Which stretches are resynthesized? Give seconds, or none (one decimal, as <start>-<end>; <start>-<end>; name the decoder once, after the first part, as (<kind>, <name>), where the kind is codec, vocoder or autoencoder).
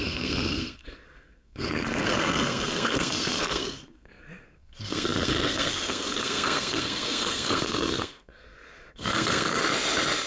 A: 0.0-9.6 (codec, SNAC)